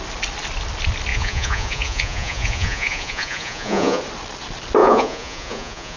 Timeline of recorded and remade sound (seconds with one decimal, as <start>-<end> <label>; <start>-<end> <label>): 0.0-1.1 recorded; 1.1-4.0 remade; 4.0-4.8 recorded; 4.8-6.0 remade

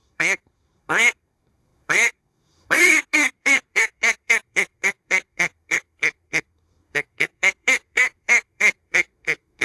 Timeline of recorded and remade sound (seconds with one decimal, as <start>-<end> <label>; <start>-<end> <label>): 0.0-9.6 remade

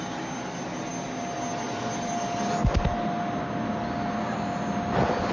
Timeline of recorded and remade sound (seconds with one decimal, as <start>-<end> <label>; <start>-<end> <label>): 0.0-5.3 recorded